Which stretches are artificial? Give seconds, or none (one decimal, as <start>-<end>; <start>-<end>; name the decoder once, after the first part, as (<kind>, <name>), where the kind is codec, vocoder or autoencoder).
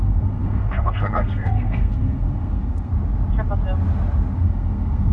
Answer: 0.0-2.9 (codec, SNAC); 4.4-5.1